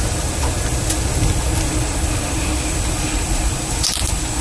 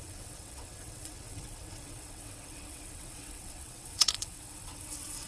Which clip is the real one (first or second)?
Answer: first